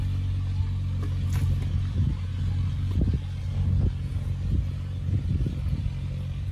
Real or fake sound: real